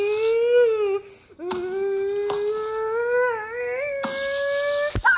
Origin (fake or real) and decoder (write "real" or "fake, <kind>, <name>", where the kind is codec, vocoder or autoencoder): real